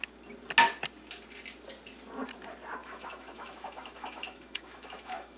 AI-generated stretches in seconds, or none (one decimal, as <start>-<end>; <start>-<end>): 2.8-5.4